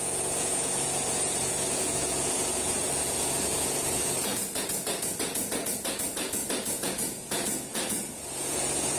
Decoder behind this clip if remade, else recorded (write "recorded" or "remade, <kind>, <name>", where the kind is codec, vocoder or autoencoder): remade, vocoder, Vocos